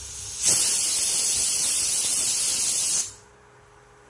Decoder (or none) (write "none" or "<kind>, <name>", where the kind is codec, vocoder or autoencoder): none